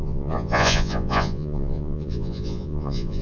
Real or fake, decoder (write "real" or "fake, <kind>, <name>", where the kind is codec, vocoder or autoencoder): fake, vocoder, Vocos